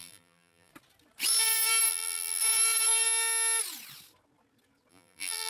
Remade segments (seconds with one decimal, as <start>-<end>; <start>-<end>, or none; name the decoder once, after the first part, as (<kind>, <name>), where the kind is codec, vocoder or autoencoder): 0.0-0.7 (vocoder, BigVGAN v2); 1.9-2.4; 4.9-5.5